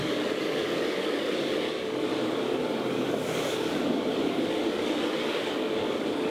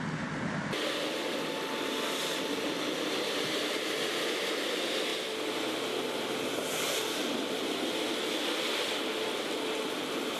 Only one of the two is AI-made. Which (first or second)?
first